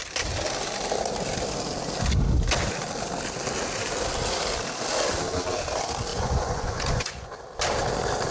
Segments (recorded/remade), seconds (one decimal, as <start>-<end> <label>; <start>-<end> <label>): 0.0-6.1 recorded; 6.1-7.4 remade; 7.4-8.3 recorded